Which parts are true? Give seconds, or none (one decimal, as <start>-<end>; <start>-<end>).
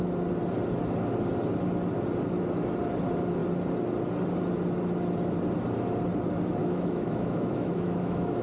0.0-6.6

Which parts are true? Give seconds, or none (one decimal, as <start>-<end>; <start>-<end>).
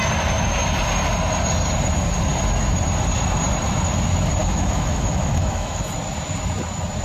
0.0-4.4; 5.8-7.0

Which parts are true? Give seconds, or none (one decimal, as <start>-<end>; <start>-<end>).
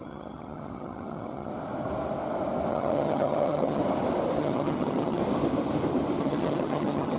1.5-2.7; 3.8-4.4; 5.2-6.2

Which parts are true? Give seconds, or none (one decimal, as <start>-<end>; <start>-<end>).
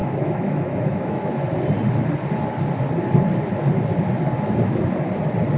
1.4-5.6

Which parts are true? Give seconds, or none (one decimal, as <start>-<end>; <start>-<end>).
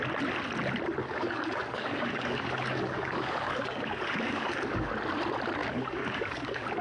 0.0-1.0; 4.9-5.6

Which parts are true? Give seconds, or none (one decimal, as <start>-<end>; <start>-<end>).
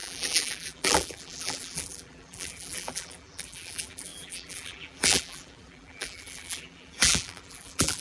none